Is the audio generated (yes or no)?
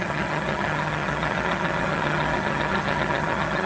yes